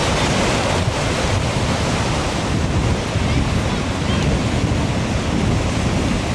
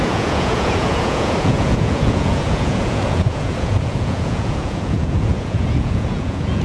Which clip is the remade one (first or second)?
second